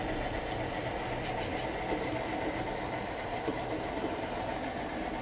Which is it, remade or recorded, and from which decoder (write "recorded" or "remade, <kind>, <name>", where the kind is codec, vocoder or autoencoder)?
recorded